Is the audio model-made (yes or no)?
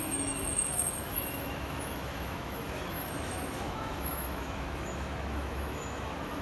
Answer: yes